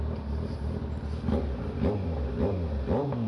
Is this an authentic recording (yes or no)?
yes